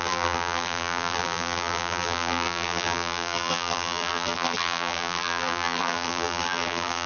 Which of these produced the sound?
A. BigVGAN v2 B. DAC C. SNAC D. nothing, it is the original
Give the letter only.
A